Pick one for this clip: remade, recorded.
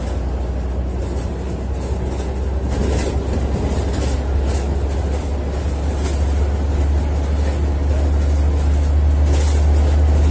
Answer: recorded